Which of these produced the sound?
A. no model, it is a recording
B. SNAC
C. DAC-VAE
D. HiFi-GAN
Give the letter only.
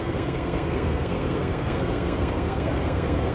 B